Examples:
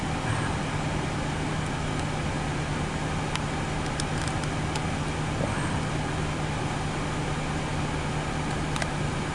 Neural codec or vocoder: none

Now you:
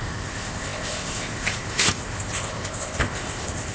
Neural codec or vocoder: codec, ZipCodec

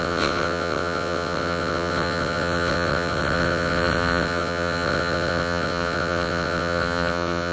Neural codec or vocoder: vocoder, WaveNeXt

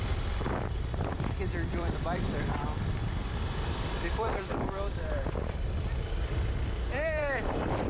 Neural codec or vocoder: vocoder, BigVGAN v2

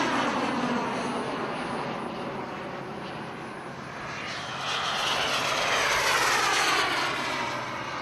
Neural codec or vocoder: none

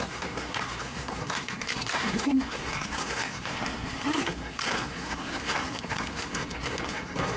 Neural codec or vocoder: codec, SNAC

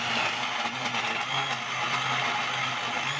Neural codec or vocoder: none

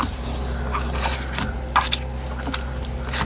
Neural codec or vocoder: none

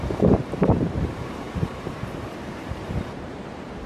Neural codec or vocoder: vocoder, BigVGAN v2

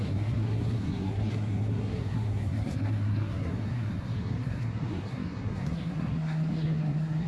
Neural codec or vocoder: codec, SNAC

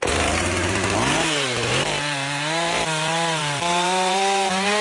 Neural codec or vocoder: vocoder, BigVGAN v2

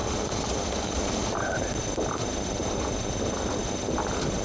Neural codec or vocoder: none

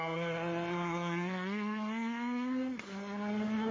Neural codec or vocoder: codec, SNAC